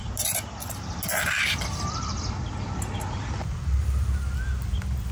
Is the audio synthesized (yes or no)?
no